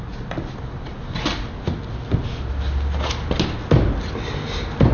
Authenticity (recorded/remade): recorded